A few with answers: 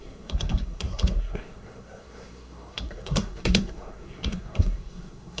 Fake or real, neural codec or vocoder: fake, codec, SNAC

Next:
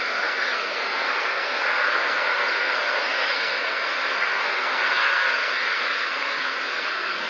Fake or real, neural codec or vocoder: fake, codec, SNAC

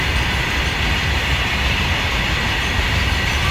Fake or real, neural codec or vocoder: real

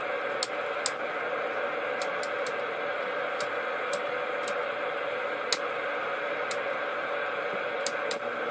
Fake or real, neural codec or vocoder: real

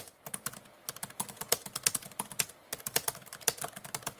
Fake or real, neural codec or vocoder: real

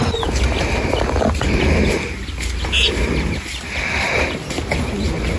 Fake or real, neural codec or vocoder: real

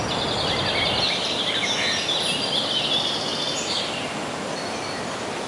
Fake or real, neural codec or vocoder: real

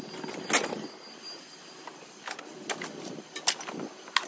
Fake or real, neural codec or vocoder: real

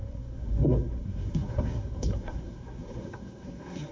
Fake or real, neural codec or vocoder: fake, codec, SNAC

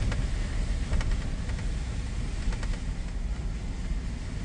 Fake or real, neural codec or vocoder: real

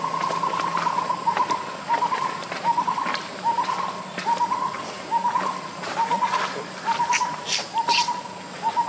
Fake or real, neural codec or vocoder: real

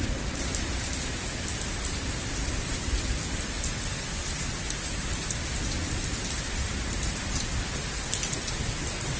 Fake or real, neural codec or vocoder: real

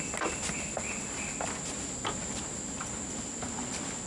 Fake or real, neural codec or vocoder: real